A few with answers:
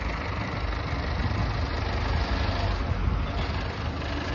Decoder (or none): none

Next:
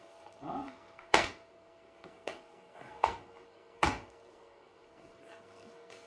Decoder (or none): codec, SNAC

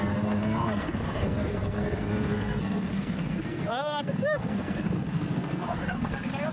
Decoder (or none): codec, SNAC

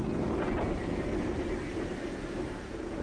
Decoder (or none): none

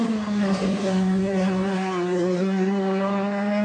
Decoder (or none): codec, SNAC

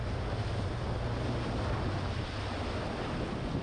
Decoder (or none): none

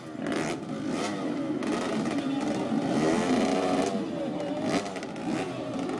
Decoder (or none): none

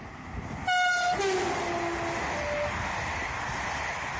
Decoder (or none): none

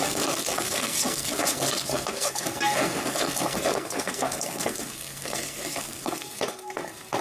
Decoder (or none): codec, SNAC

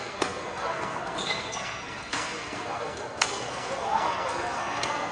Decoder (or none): codec, SNAC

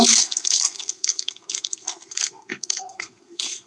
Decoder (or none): codec, SNAC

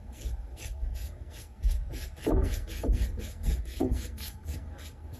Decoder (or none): codec, SNAC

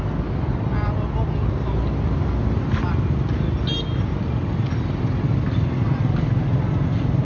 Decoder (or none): none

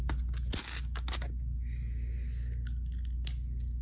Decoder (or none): none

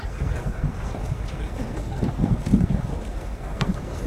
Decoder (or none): codec, SNAC